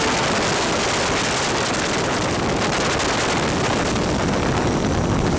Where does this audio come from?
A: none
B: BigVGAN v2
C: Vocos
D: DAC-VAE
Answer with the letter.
A